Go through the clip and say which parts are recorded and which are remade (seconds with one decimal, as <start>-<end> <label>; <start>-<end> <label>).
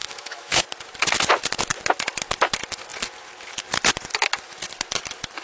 0.0-0.6 remade; 0.6-5.4 recorded